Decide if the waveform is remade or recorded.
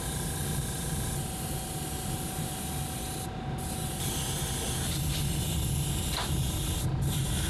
recorded